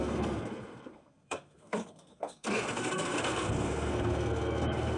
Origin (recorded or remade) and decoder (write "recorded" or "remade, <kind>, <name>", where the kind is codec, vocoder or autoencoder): remade, codec, SNAC